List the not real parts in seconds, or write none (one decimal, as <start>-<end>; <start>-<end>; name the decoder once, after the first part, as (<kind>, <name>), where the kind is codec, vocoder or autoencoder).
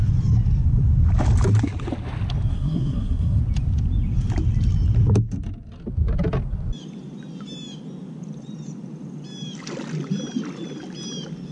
2.5-3.4 (codec, SNAC)